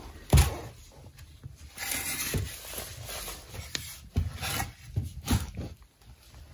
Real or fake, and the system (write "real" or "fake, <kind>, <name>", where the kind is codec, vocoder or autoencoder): real